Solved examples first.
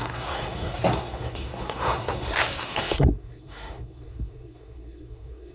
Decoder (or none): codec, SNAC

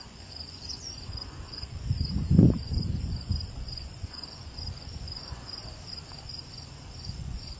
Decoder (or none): vocoder, Vocos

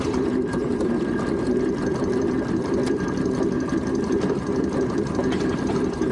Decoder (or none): vocoder, BigVGAN v2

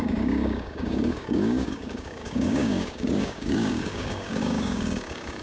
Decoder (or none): codec, DAC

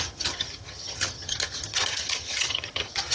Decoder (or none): vocoder, HiFi-GAN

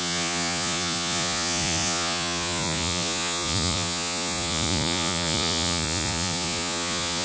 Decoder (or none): vocoder, Vocos